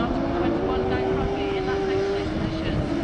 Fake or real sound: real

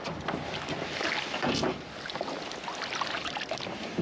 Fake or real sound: real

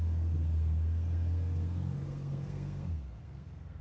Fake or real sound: fake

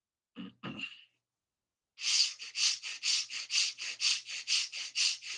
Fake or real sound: real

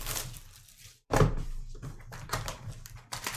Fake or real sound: fake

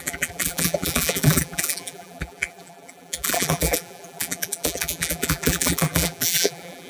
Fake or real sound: fake